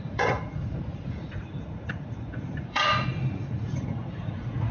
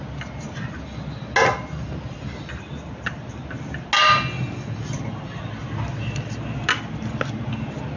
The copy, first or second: first